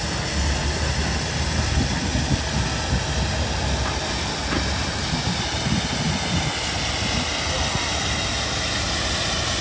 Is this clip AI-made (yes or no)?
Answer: no